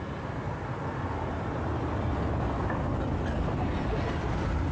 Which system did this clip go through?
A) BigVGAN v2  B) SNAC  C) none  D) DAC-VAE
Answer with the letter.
C